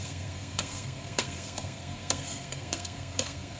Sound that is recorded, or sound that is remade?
remade